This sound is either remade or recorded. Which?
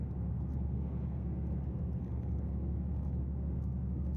remade